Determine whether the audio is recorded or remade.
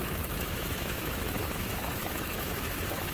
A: remade